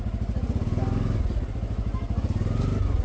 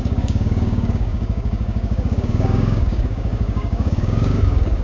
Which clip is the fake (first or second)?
second